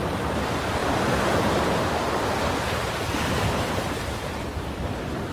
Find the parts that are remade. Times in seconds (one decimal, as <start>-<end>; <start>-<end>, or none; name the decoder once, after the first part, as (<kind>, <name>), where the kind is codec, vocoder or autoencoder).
none